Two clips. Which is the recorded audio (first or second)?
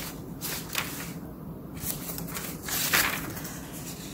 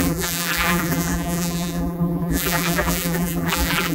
first